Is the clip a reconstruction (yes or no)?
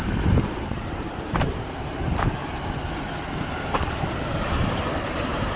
yes